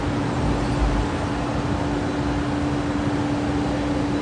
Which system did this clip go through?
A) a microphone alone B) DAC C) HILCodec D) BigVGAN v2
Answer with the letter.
A